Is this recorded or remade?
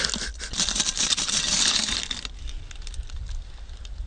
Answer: recorded